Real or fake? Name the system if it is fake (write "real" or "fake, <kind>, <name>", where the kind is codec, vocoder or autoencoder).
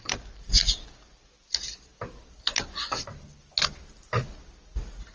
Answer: real